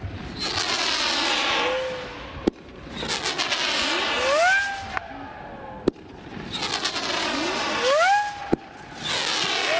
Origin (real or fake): real